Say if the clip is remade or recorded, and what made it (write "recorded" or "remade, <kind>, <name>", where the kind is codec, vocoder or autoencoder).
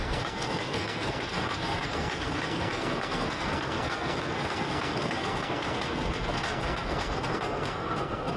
remade, codec, SNAC